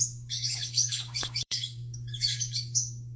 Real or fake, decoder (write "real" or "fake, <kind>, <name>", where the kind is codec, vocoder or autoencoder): fake, codec, DAC